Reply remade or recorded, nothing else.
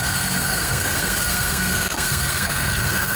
remade